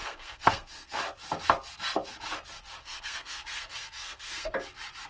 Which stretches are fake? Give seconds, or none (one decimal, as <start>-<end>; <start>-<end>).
0.0-1.0; 2.8-4.5